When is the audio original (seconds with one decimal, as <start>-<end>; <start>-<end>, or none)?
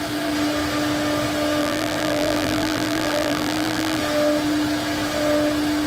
0.0-1.6; 4.0-5.9